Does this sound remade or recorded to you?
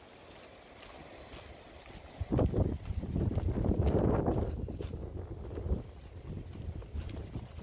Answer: recorded